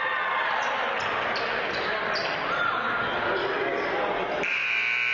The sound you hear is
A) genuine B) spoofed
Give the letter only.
A